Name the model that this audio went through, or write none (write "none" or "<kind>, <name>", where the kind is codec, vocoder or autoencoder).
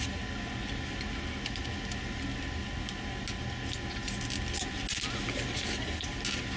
none